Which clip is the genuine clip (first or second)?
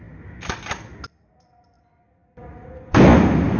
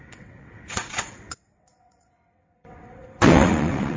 first